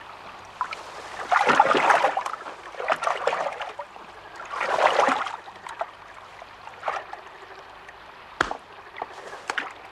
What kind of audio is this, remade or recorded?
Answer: recorded